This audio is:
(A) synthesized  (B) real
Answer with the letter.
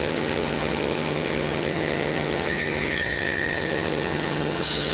A